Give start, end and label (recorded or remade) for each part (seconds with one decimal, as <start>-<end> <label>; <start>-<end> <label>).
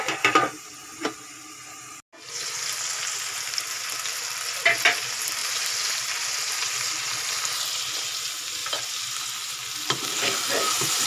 0.0-5.4 recorded; 5.4-6.9 remade; 6.9-8.6 recorded; 8.6-9.1 remade; 9.1-11.1 recorded